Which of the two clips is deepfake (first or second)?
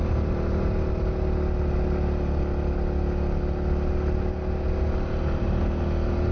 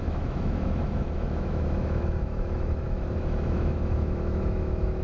second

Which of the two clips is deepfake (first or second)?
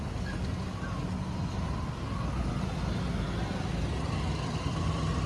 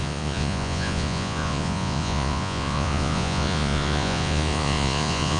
second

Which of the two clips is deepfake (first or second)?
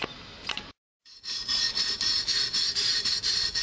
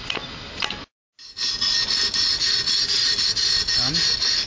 first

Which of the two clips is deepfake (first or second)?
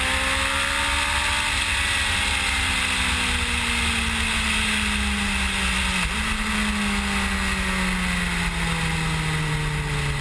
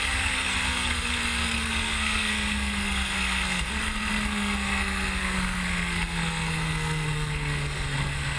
second